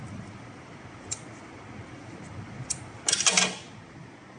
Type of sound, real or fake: real